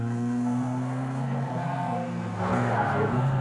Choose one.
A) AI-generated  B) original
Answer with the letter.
A